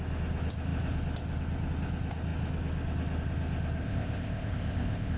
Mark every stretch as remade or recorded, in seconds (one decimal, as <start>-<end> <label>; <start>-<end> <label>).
0.0-3.8 recorded; 3.8-5.2 remade